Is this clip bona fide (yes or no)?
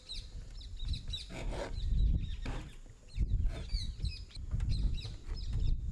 yes